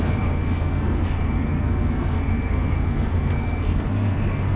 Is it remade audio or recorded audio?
remade